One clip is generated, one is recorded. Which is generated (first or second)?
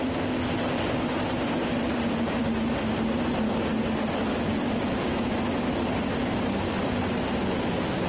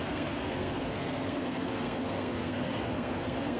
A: second